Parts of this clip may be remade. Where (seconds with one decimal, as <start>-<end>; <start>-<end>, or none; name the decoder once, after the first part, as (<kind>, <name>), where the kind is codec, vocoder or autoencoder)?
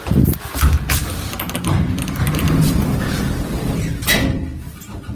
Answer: none